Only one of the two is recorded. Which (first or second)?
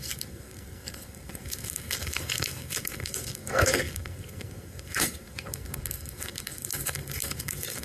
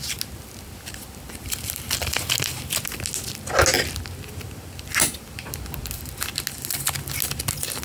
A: second